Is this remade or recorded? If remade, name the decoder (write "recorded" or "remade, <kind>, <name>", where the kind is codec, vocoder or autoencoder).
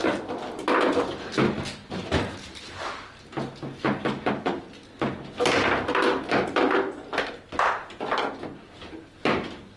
recorded